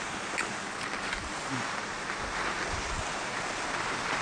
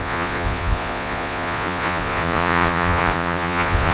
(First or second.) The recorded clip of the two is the first